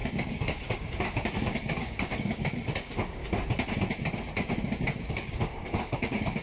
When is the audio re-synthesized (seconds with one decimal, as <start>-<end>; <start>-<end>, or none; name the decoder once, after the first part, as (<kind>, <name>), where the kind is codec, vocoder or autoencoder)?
0.0-3.2 (codec, DAC); 5.1-6.4